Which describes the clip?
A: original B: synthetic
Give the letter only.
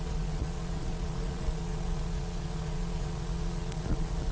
B